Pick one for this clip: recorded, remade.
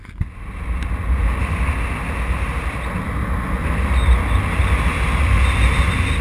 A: recorded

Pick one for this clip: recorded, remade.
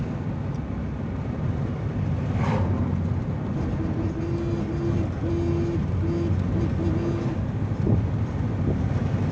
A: recorded